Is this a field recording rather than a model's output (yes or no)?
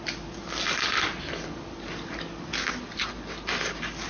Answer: yes